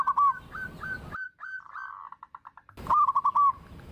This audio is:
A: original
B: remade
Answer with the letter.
A